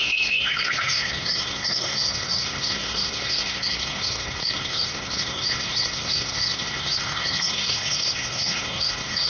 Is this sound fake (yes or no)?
yes